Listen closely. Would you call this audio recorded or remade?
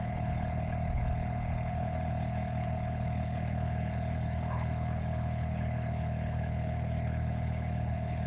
remade